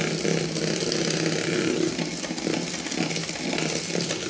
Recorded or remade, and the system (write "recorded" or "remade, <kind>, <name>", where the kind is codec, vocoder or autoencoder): recorded